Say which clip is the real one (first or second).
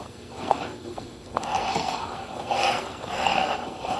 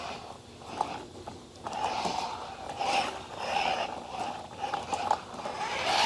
second